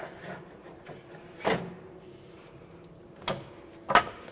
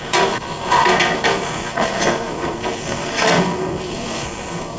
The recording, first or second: first